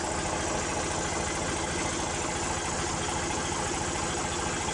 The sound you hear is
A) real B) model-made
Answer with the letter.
A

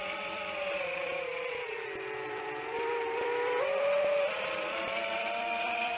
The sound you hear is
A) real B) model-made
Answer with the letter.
B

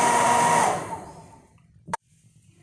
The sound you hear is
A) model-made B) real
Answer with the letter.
A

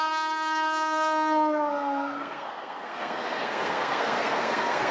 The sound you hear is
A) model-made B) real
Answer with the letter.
A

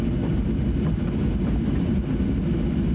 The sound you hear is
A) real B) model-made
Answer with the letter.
A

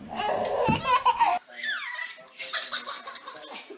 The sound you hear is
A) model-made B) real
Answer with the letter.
A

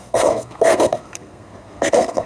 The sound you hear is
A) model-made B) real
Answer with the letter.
A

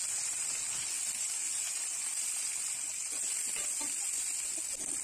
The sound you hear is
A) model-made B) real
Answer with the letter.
B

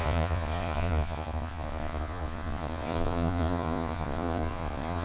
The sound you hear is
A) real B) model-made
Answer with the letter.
B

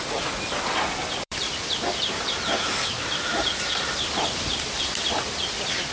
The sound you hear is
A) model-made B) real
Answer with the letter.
A